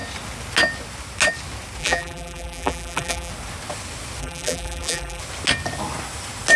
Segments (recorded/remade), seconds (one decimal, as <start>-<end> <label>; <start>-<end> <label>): 0.0-1.8 recorded; 1.8-3.3 remade; 3.3-4.2 recorded; 4.2-5.2 remade; 5.2-6.6 recorded